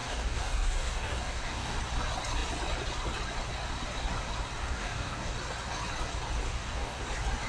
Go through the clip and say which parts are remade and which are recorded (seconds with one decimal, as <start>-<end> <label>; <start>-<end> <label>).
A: 0.0-1.8 remade; 1.8-4.6 recorded; 4.6-5.3 remade; 5.3-6.5 recorded; 6.5-7.0 remade; 7.0-7.5 recorded